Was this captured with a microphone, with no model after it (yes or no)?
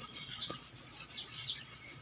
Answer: no